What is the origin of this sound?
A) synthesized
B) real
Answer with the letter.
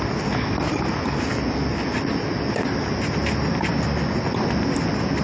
B